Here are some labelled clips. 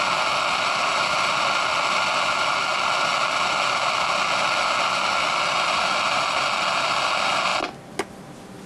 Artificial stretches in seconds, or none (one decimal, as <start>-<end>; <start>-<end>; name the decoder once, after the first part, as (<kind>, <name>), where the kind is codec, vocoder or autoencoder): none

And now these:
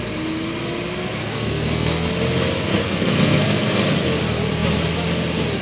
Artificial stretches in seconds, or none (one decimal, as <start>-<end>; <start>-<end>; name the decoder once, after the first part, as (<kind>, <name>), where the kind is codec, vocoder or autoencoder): 1.2-2.1 (codec, SNAC); 2.7-3.8

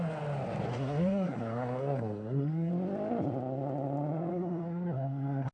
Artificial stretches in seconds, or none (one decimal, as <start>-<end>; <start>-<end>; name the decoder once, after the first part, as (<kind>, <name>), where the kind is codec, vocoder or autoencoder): 0.7-2.7 (codec, SNAC); 4.3-5.5